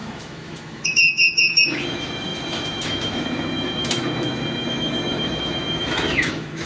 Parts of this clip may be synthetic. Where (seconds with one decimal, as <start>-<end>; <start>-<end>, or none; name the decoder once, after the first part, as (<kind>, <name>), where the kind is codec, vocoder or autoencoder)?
0.0-6.7 (autoencoder, DAC-VAE)